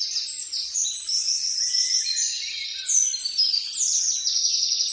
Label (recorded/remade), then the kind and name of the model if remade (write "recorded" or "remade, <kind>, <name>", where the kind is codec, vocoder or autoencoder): recorded